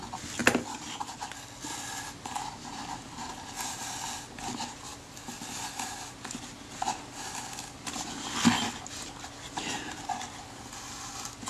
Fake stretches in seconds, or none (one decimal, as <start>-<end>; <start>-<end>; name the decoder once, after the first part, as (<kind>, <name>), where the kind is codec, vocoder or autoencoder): none